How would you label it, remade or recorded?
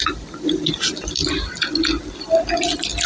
recorded